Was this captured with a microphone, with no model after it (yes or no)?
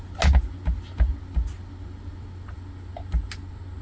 yes